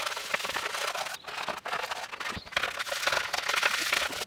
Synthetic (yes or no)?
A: no